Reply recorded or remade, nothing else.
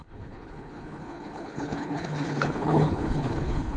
remade